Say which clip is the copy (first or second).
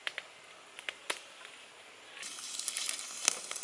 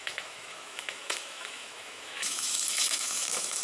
second